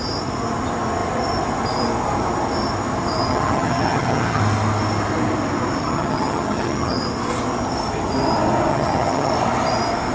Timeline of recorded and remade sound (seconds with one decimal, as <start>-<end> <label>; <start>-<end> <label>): 0.0-3.3 recorded; 3.3-4.4 remade; 4.4-5.8 recorded; 5.8-7.0 remade; 7.0-8.7 recorded; 8.7-9.3 remade; 9.3-10.1 recorded